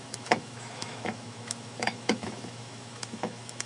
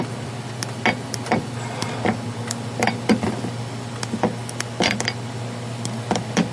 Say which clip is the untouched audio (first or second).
second